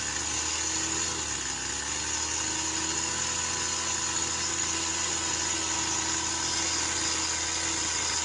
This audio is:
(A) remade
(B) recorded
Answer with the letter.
B